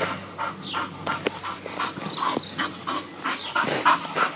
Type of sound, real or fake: real